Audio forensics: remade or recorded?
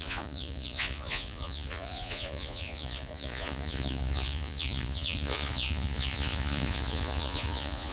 remade